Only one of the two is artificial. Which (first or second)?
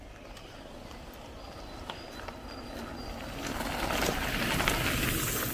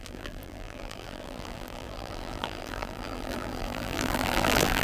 second